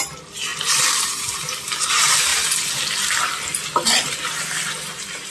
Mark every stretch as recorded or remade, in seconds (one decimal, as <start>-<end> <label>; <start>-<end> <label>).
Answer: 0.0-5.3 recorded